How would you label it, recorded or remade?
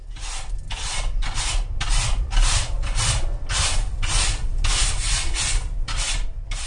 recorded